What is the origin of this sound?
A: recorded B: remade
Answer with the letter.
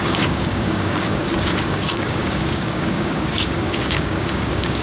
B